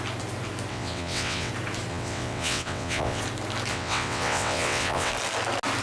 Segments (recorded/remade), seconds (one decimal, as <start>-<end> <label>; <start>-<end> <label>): 0.0-0.7 recorded; 0.7-1.5 remade; 1.5-1.9 recorded; 1.9-3.2 remade; 3.2-3.7 recorded; 3.7-5.1 remade; 5.1-5.8 recorded